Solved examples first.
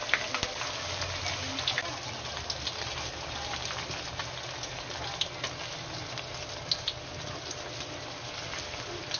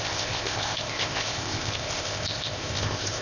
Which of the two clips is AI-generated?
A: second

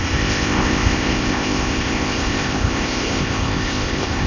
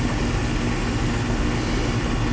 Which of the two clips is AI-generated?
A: first